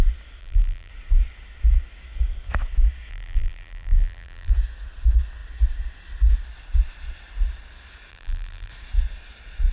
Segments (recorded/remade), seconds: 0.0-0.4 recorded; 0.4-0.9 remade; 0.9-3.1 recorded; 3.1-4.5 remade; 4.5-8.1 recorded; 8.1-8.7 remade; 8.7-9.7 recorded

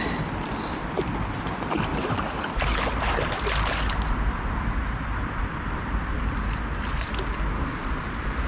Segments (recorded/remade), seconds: 0.0-1.9 recorded; 1.9-3.4 remade; 3.4-8.5 recorded

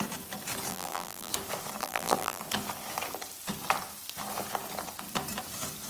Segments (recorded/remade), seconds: 0.0-0.7 recorded; 0.7-1.3 remade; 1.3-1.8 recorded; 1.8-2.4 remade; 2.4-5.9 recorded

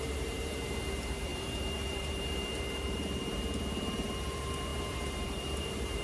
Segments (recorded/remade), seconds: 0.0-6.0 remade

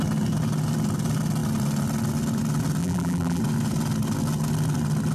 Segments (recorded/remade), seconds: 0.0-2.8 recorded; 2.8-3.4 remade; 3.4-5.1 recorded

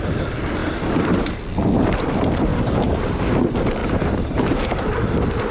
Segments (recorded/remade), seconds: 0.0-0.6 recorded; 0.6-1.4 remade; 1.4-2.5 recorded; 2.5-3.3 remade; 3.3-3.8 recorded; 3.8-5.1 remade; 5.1-5.5 recorded

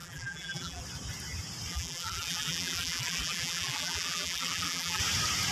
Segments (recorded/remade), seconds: 0.0-0.8 remade; 0.8-1.7 recorded; 1.7-5.0 remade; 5.0-5.5 recorded

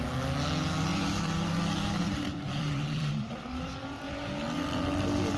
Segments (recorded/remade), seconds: 0.0-0.9 recorded; 0.9-1.5 remade; 1.5-2.0 recorded; 2.0-4.3 remade; 4.3-5.4 recorded